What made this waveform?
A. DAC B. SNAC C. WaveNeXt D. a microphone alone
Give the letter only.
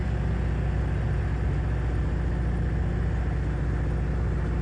D